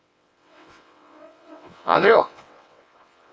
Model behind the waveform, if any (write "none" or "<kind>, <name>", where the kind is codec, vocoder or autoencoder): vocoder, WaveNeXt